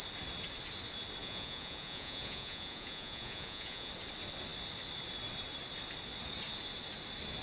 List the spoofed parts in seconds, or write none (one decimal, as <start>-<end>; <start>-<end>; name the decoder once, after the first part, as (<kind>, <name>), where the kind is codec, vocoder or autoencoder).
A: 1.2-3.9 (vocoder, Vocos)